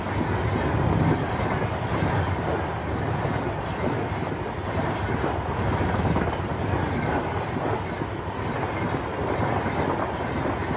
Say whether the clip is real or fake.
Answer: real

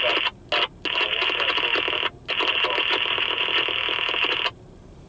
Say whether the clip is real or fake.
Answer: real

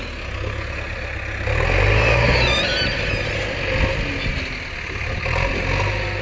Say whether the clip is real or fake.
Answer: real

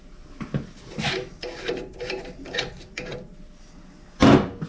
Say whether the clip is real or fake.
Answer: real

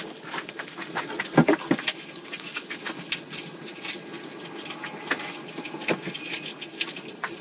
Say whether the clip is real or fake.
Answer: real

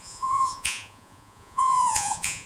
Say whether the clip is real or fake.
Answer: fake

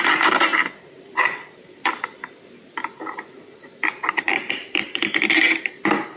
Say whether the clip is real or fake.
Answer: real